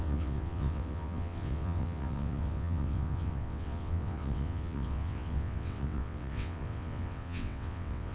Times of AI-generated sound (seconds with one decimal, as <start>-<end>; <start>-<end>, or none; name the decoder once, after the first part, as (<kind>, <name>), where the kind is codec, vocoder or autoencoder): 0.0-8.1 (vocoder, WaveNeXt)